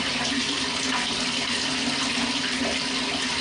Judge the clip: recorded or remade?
recorded